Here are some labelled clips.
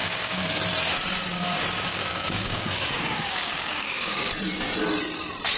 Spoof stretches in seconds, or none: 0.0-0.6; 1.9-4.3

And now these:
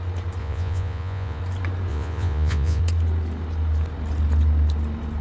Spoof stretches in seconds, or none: 0.4-1.4; 1.9-2.8

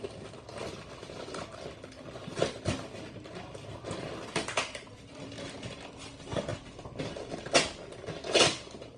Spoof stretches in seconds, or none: 1.0-1.5; 6.5-7.3